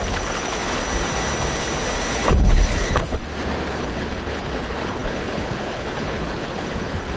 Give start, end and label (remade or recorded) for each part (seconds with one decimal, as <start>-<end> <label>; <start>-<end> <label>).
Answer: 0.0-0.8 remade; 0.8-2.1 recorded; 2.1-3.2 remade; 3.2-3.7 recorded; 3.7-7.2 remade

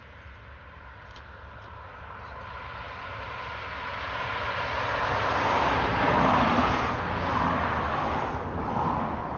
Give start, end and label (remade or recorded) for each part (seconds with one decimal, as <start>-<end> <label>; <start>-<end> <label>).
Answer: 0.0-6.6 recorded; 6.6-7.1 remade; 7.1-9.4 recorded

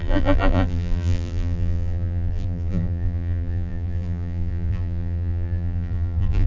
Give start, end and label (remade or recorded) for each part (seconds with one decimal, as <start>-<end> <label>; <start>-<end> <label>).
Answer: 0.0-6.5 remade